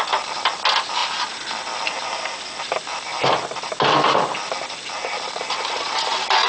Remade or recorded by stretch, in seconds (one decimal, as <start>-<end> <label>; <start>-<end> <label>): 0.0-6.5 recorded